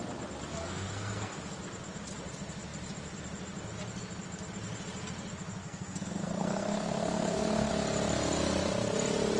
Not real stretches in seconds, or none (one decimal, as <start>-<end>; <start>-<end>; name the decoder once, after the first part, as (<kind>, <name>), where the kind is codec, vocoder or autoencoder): 0.5-1.5 (codec, SNAC); 5.6-7.7